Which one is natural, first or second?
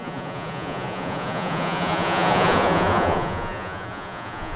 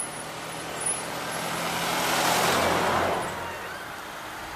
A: second